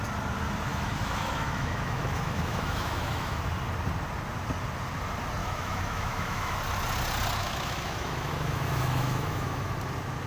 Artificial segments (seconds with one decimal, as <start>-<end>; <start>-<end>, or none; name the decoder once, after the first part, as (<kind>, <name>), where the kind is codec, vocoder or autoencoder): 0.7-3.4 (autoencoder, DAC-VAE); 5.4-6.6; 7.4-9.6